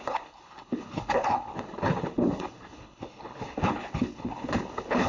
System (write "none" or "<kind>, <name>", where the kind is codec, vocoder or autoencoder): codec, HILCodec